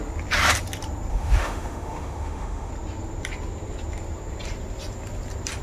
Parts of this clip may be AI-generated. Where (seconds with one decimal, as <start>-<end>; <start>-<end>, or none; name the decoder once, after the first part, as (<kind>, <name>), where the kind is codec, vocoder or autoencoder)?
1.1-2.7 (autoencoder, DAC-VAE)